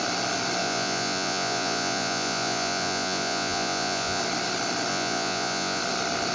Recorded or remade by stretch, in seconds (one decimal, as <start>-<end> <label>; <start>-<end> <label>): 0.0-0.6 recorded; 0.6-4.2 remade; 4.2-4.9 recorded; 4.9-5.8 remade; 5.8-6.3 recorded